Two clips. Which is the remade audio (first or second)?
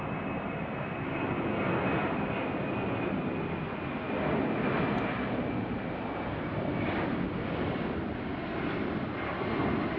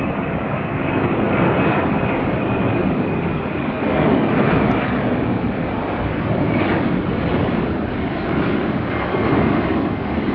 second